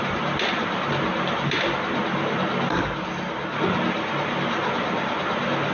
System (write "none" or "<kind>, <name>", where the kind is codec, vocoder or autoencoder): none